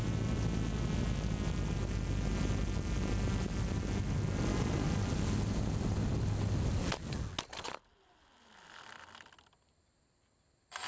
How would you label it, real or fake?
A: real